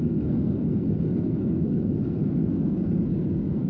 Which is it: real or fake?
fake